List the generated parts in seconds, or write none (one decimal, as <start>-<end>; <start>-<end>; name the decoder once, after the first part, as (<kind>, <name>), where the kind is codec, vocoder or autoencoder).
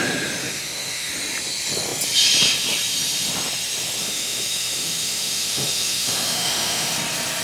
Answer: 0.4-1.1 (autoencoder, DAC-VAE); 4.0-6.9